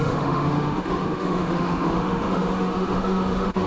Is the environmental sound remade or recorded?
remade